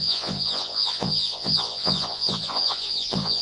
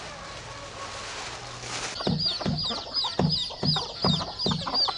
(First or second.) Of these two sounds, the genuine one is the second